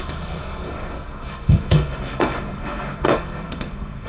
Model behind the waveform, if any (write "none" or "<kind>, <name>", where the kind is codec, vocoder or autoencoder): codec, SNAC